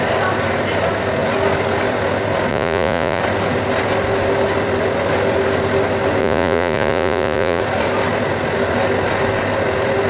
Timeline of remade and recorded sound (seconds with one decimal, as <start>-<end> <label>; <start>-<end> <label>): 0.0-2.5 recorded; 2.5-3.2 remade; 3.2-6.2 recorded; 6.2-7.6 remade; 7.6-10.1 recorded

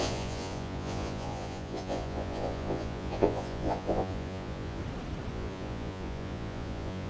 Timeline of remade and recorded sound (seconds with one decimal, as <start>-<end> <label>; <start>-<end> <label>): 0.0-4.8 remade; 4.8-5.3 recorded; 5.3-7.1 remade

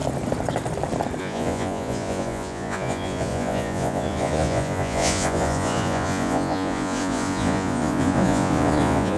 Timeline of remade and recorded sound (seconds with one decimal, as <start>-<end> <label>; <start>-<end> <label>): 0.0-1.2 recorded; 1.2-9.2 remade

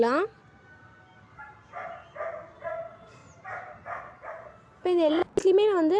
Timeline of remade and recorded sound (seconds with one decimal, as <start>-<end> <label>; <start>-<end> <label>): 0.0-0.4 remade; 0.4-2.6 recorded; 2.6-3.2 remade; 3.2-4.0 recorded; 4.0-5.2 remade; 5.2-6.0 recorded